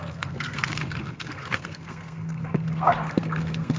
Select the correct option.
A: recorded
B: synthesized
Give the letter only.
B